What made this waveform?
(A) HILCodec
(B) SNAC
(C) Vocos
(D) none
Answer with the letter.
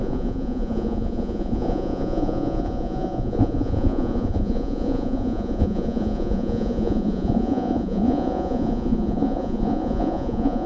C